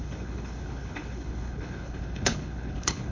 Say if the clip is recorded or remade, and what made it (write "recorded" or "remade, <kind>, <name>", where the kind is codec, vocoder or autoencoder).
remade, codec, HILCodec